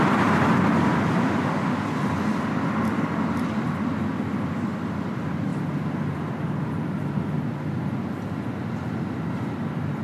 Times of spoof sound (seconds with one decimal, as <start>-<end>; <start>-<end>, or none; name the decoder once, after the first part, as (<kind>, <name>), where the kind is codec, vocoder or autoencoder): none